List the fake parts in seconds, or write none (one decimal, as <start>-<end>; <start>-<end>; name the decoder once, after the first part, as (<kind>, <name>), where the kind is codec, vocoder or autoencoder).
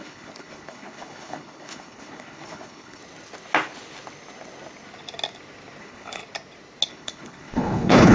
0.0-3.0 (codec, HILCodec); 5.8-6.2; 6.9-8.1